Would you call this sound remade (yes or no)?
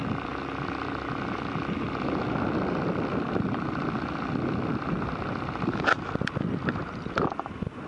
no